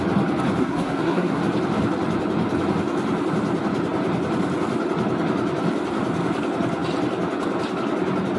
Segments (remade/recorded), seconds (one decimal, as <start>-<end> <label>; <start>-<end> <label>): 0.0-0.6 recorded; 0.6-1.4 remade; 1.4-8.4 recorded